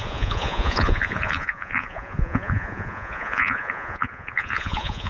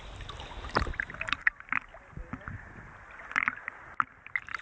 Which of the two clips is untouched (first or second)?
second